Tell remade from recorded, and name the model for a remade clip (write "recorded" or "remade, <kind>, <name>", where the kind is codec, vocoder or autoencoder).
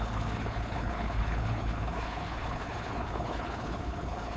remade, codec, HILCodec